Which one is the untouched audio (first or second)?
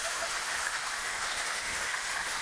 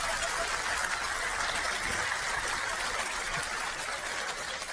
second